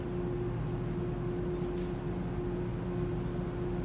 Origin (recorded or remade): recorded